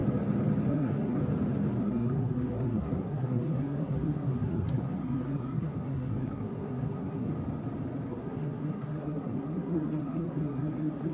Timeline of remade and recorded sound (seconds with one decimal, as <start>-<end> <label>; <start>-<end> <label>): 0.0-0.7 recorded; 0.7-1.2 remade; 1.2-1.8 recorded; 1.8-7.3 remade; 7.3-8.1 recorded; 8.1-11.1 remade